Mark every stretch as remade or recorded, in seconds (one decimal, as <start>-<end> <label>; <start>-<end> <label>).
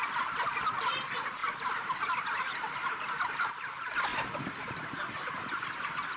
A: 0.0-6.2 recorded